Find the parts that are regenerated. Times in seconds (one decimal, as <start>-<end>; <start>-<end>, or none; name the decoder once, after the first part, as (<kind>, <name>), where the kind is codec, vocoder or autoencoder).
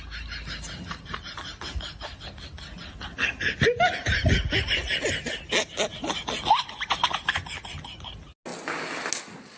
none